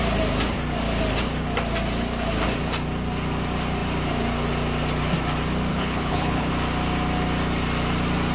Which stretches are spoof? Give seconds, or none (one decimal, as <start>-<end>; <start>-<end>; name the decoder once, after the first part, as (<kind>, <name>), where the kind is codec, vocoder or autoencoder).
5.7-6.5 (codec, HILCodec)